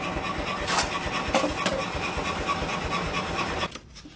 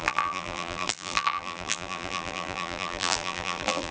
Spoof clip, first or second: second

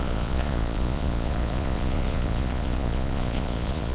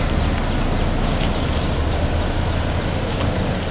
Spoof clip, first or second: first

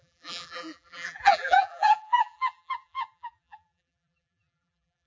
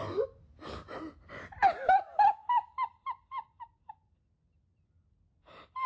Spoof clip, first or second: first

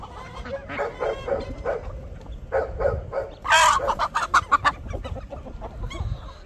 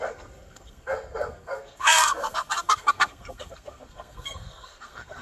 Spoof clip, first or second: second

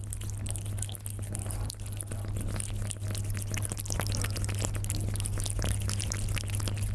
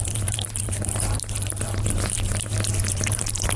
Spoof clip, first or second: second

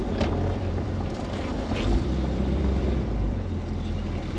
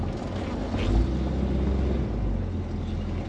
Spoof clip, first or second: first